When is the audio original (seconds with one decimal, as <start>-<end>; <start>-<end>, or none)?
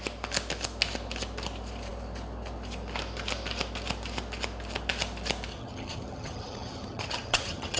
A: 0.0-5.5